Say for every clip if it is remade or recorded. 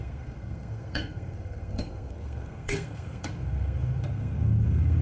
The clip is remade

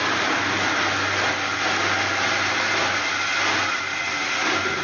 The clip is recorded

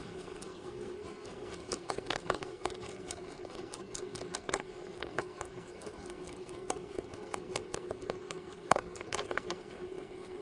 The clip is remade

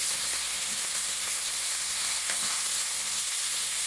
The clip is remade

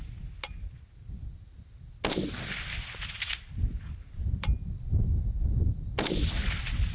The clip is recorded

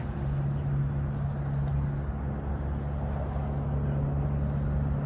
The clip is recorded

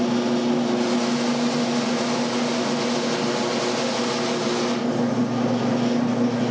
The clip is recorded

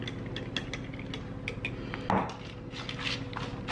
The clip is recorded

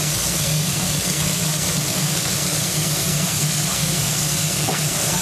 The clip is remade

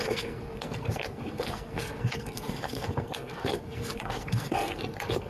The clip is remade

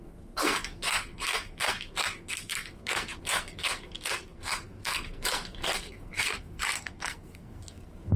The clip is remade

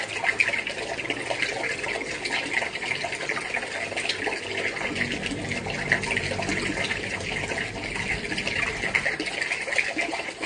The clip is recorded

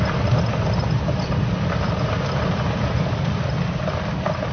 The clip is recorded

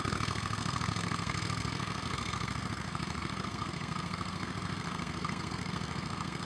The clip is remade